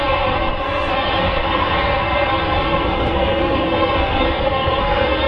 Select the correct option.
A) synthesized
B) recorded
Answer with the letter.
A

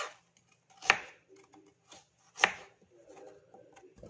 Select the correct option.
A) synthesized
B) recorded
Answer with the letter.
B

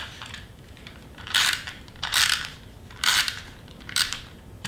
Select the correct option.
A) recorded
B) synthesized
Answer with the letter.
B